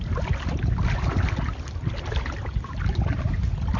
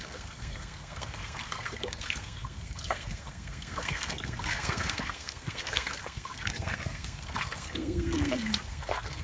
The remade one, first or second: second